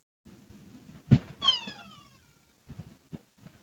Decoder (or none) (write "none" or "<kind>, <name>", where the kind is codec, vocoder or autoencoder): none